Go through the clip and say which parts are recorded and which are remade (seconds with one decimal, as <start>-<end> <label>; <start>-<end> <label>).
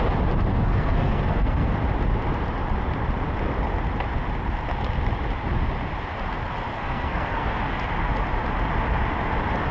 0.0-0.5 recorded; 0.5-1.7 remade; 1.7-6.7 recorded; 6.7-7.6 remade; 7.6-9.7 recorded